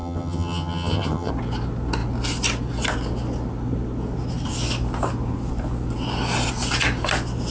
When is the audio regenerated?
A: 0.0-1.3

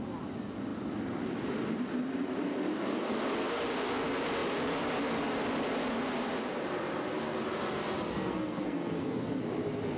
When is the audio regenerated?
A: 8.1-9.4